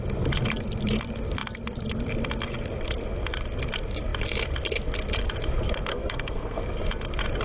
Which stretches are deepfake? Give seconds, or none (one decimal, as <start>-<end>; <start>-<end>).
5.9-6.6